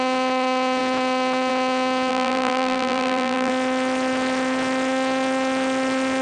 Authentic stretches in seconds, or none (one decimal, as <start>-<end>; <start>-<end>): 0.0-2.1; 3.5-6.2